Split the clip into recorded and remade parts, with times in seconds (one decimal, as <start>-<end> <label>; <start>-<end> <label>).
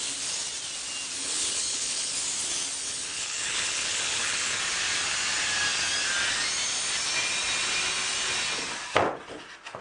0.0-1.2 recorded; 1.2-2.1 remade; 2.1-2.8 recorded; 2.8-4.6 remade; 4.6-9.8 recorded